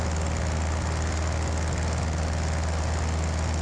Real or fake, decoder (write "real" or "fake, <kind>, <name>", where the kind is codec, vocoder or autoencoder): real